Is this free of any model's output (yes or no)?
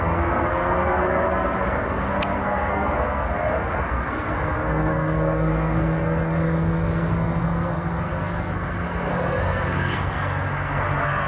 no